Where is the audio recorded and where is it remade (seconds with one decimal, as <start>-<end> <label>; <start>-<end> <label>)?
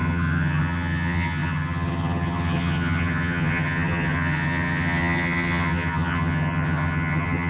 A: 0.0-7.5 remade